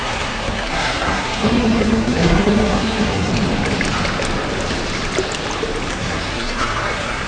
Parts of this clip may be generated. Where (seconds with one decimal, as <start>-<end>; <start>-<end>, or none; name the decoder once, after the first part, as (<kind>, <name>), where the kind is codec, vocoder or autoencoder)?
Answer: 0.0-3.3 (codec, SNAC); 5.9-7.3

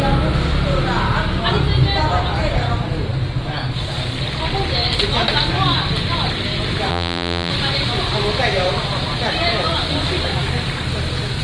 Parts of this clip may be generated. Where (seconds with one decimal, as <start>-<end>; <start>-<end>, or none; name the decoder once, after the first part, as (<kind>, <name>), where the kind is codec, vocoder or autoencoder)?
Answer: 6.9-7.5 (vocoder, BigVGAN v2)

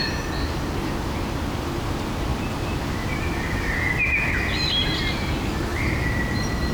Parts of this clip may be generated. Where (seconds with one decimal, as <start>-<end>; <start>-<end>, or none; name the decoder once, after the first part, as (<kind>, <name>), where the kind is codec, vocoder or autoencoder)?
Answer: none

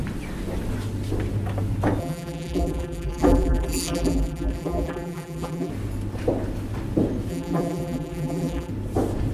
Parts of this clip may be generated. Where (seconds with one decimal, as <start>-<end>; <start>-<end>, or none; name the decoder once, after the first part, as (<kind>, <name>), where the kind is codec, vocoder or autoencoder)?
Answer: 2.0-5.7 (vocoder, BigVGAN v2); 7.3-8.7

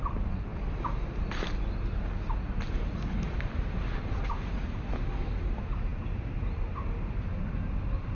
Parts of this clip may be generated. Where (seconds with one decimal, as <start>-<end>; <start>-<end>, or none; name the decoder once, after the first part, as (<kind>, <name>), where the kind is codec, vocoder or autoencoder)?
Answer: none

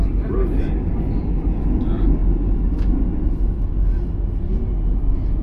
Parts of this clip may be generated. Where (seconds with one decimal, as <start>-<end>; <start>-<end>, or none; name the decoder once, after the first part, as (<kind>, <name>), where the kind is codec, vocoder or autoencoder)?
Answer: none